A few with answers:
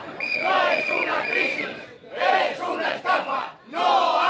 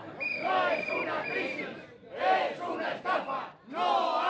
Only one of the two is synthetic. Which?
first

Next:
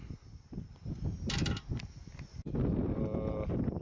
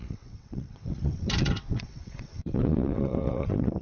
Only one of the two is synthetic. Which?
second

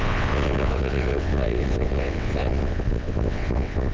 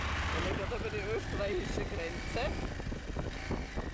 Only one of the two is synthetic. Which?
first